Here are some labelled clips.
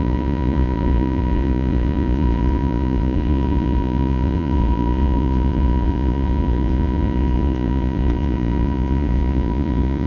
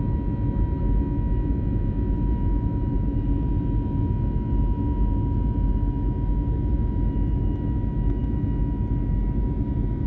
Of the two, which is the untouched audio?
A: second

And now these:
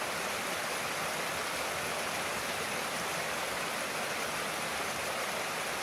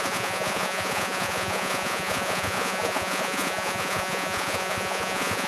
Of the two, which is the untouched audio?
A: first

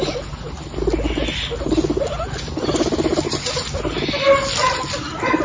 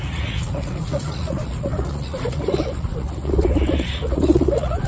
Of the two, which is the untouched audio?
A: first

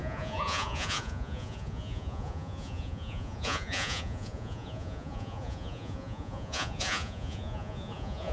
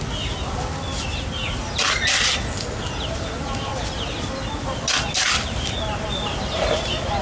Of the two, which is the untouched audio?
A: second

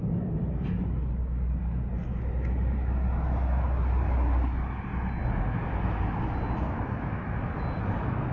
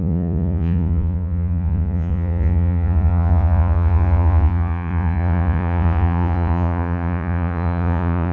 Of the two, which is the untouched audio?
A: first